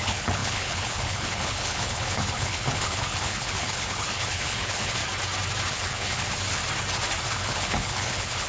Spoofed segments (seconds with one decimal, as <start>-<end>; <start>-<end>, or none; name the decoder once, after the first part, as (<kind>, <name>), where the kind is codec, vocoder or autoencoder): 0.0-5.0 (codec, HILCodec); 5.7-6.6; 7.3-8.5